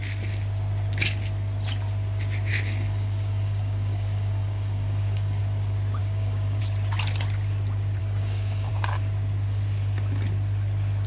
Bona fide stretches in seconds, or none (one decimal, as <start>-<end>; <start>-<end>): 0.0-2.5; 5.4-6.0; 6.6-8.0; 8.7-11.1